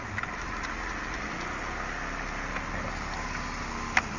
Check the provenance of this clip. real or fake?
real